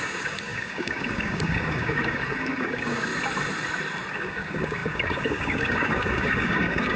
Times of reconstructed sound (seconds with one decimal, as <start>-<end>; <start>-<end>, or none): 0.0-3.1; 4.1-7.0